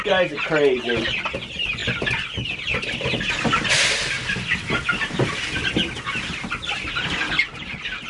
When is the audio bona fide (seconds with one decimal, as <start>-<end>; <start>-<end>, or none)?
0.0-8.1